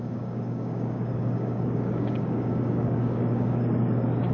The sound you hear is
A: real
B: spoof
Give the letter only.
B